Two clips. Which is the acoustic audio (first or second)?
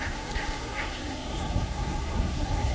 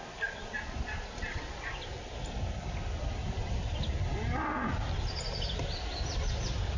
second